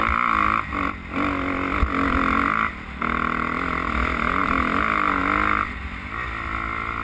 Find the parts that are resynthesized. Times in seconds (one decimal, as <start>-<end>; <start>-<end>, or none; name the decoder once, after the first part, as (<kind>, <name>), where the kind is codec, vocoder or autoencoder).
none